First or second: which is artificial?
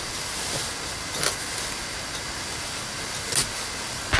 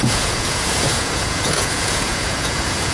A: second